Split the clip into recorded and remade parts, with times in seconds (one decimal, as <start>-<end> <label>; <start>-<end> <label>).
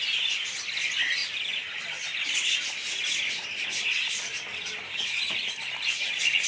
0.0-6.5 recorded